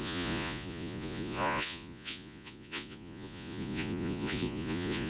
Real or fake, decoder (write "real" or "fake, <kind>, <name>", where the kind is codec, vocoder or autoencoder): fake, vocoder, Vocos